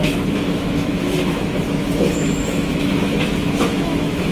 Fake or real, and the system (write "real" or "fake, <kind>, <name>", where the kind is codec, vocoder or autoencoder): fake, autoencoder, DAC-VAE